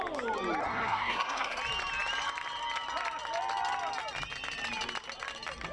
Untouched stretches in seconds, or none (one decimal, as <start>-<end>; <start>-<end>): 0.0-0.6; 1.6-5.7